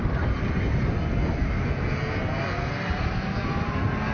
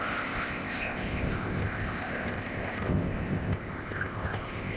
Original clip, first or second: first